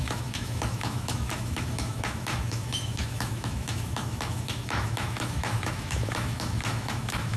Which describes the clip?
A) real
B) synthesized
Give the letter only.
B